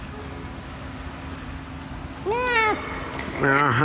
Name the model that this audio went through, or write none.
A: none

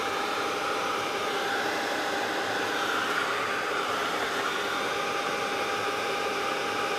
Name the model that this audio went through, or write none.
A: vocoder, BigVGAN v2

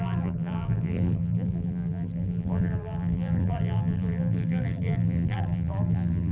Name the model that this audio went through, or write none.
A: vocoder, BigVGAN v2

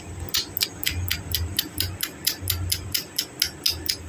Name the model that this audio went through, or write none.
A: none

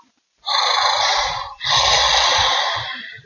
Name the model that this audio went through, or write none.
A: vocoder, BigVGAN v2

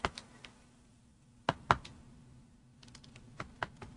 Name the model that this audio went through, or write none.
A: none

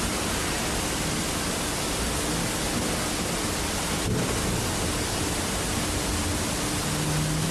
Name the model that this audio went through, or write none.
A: none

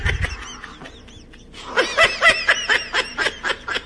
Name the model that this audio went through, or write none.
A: none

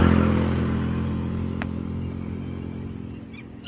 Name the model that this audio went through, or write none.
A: vocoder, BigVGAN v2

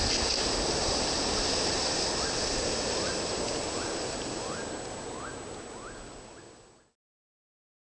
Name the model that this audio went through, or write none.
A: none